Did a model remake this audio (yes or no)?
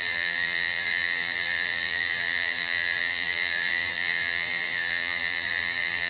yes